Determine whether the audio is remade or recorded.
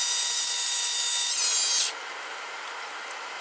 recorded